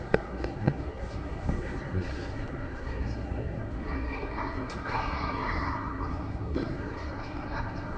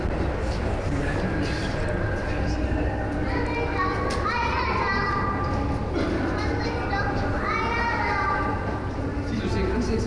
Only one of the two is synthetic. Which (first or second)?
first